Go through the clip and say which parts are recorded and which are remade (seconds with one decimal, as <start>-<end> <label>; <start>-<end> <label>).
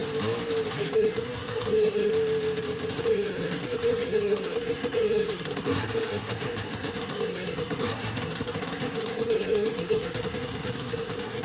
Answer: 0.0-0.7 recorded; 0.7-2.1 remade; 2.1-2.9 recorded; 2.9-11.4 remade